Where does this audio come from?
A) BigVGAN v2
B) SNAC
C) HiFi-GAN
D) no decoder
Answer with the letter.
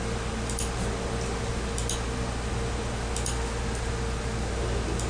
D